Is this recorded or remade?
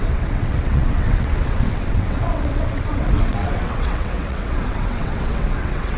remade